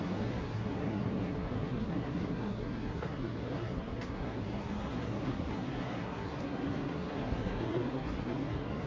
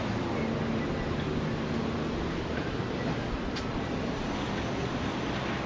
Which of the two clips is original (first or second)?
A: second